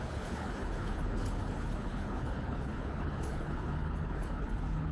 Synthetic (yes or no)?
yes